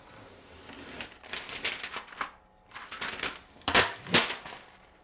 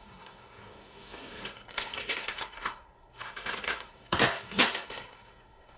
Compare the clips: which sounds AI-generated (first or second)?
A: second